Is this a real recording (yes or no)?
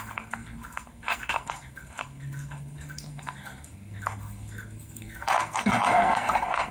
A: no